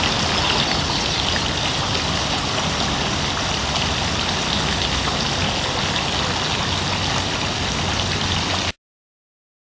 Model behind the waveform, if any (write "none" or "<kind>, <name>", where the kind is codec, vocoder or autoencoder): none